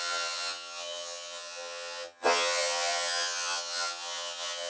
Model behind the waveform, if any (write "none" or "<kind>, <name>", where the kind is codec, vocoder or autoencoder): vocoder, HiFi-GAN